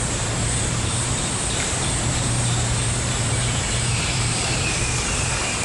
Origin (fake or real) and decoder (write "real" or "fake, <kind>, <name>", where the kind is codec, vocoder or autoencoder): fake, vocoder, BigVGAN v2